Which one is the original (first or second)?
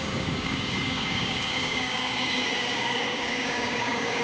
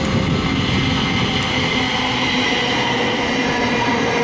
second